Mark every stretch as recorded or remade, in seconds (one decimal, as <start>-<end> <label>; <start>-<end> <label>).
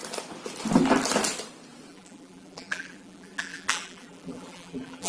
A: 0.0-1.9 recorded; 1.9-5.1 remade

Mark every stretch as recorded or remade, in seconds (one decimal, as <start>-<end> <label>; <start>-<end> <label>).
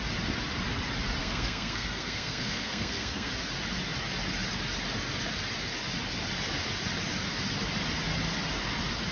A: 0.0-1.2 recorded; 1.2-3.3 remade; 3.3-9.1 recorded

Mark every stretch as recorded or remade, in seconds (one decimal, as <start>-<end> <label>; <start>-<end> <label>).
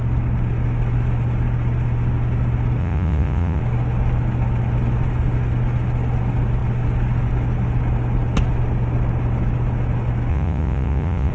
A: 0.0-2.8 recorded; 2.8-3.6 remade; 3.6-10.3 recorded; 10.3-11.3 remade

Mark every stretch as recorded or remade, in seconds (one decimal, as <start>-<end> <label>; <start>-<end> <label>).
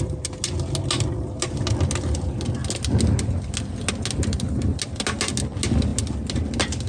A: 0.0-6.9 recorded